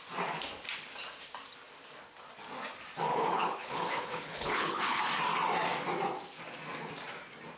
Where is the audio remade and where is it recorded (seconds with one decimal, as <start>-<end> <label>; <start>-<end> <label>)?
0.0-3.1 recorded; 3.1-5.0 remade; 5.0-7.6 recorded